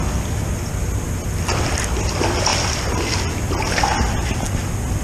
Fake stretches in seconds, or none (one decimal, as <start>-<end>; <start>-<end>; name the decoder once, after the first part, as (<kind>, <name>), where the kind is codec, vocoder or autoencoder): none